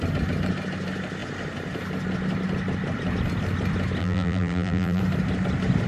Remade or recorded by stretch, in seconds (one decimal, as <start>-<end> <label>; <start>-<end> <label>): 0.0-4.0 recorded; 4.0-5.0 remade; 5.0-5.9 recorded

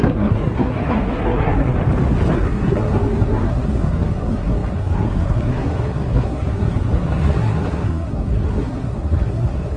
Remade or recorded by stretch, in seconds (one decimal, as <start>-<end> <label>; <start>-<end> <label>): 0.0-1.8 remade; 1.8-2.3 recorded; 2.3-9.8 remade

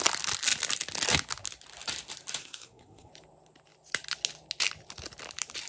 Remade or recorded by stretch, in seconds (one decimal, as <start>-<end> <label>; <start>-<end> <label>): 0.0-2.4 recorded; 2.4-3.1 remade; 3.1-5.7 recorded

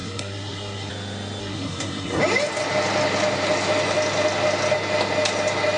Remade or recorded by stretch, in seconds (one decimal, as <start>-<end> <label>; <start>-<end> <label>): 0.0-0.9 remade; 0.9-1.4 recorded; 1.4-2.2 remade; 2.2-5.8 recorded

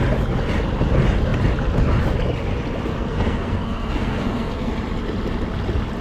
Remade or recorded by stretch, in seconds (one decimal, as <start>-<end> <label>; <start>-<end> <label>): 0.0-2.9 recorded; 2.9-4.7 remade; 4.7-6.0 recorded